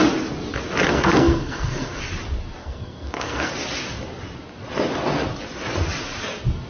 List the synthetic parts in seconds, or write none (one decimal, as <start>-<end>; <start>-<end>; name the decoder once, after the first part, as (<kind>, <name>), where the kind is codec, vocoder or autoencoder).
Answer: 0.9-2.0 (codec, SNAC); 2.6-3.5